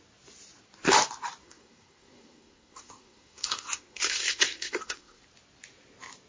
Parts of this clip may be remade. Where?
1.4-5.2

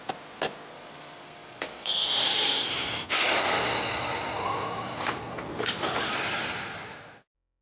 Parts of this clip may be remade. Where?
0.7-2.1